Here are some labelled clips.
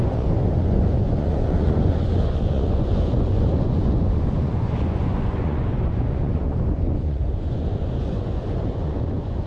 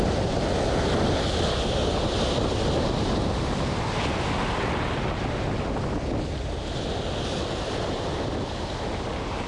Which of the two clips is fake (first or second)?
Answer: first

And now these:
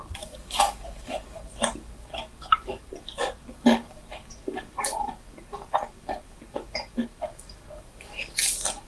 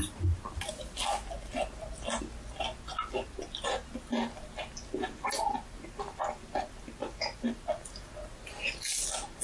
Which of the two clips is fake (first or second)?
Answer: first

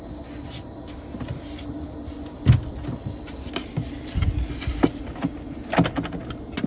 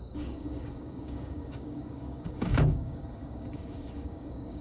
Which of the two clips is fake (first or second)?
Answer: second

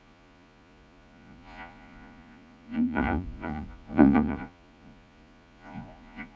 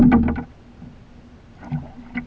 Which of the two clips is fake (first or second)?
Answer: first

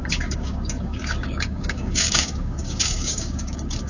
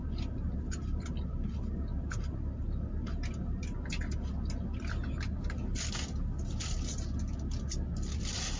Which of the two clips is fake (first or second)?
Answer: first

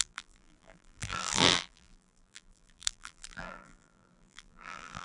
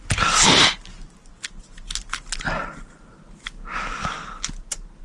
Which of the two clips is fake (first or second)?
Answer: first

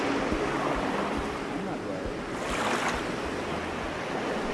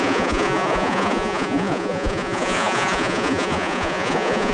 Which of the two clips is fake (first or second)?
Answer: second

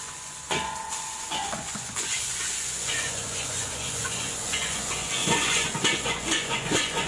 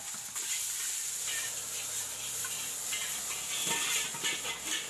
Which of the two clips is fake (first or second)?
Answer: first